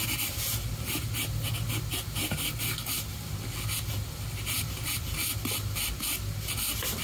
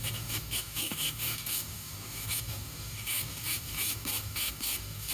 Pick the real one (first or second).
first